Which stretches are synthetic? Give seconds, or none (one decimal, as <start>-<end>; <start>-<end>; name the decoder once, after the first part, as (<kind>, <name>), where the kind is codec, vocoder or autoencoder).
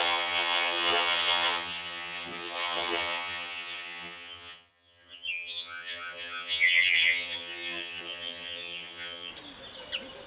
0.0-9.3 (vocoder, HiFi-GAN)